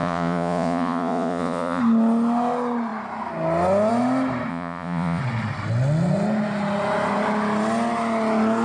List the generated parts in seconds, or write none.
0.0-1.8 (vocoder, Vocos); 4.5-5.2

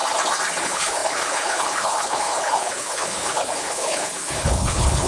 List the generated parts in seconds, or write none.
0.6-5.1 (codec, HILCodec)

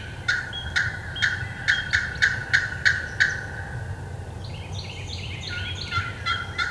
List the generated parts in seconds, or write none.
none

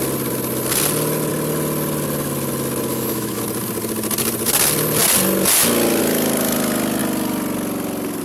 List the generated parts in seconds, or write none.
2.9-3.4 (autoencoder, DAC-VAE)

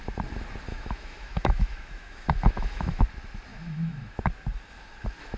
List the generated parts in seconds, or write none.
0.7-3.0 (autoencoder, DAC-VAE); 3.5-4.2

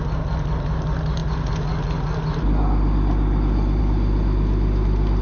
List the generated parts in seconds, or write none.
none

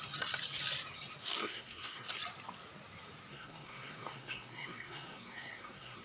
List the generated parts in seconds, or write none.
1.4-2.1 (codec, SNAC); 3.3-6.0